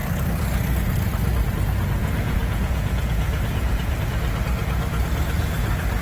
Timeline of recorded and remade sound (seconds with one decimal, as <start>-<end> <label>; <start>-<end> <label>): 0.0-2.0 recorded; 2.0-4.0 remade; 4.0-6.0 recorded